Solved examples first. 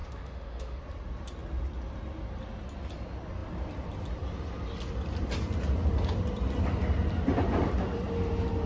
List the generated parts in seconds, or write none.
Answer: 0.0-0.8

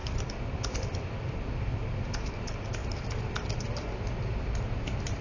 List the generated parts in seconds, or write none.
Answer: 0.0-5.2

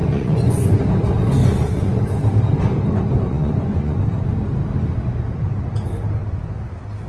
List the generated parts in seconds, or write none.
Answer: 0.0-0.8; 1.4-2.0; 3.3-4.0

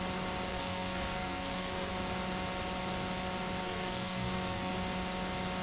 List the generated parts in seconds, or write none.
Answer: 0.5-1.9; 3.6-4.7

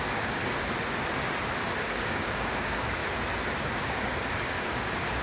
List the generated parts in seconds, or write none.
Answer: 0.0-0.4; 1.8-3.0; 3.8-5.2

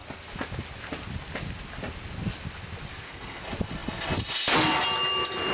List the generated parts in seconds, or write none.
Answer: 2.9-3.4

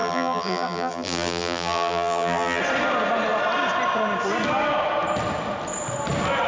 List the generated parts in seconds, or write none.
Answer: 0.0-2.6